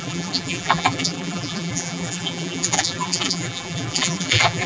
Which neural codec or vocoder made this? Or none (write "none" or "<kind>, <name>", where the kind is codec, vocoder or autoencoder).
vocoder, BigVGAN v2